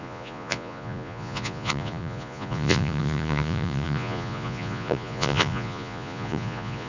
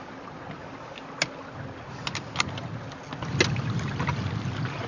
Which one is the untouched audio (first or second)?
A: second